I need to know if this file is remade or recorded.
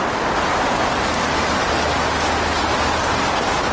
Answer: recorded